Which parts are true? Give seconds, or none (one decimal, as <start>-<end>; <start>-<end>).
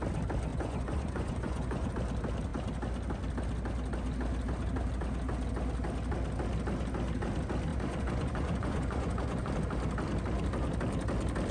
0.0-0.5; 1.9-7.7; 9.5-11.5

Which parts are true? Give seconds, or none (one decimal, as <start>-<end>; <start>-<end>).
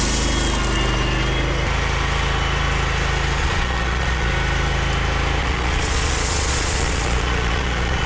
0.0-3.4; 4.3-5.4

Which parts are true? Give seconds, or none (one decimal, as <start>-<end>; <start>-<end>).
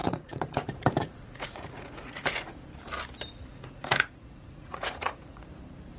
2.6-3.5; 5.6-6.0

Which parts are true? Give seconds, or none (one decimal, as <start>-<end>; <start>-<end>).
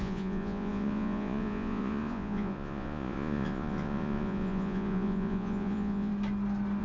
6.1-6.8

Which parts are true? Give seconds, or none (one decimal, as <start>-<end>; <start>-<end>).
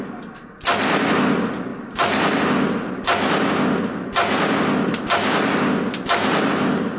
0.0-7.0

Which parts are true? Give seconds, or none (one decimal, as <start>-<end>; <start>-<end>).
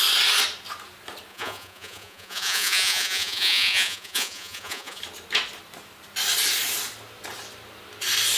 0.0-1.3; 5.0-8.4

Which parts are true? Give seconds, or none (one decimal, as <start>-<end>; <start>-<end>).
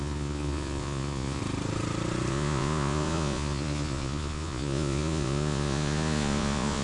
1.4-2.3